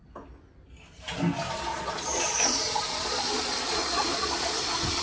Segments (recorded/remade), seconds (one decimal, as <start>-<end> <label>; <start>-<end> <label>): 0.0-1.7 recorded; 1.7-5.0 remade